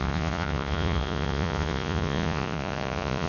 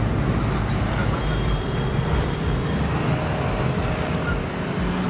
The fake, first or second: first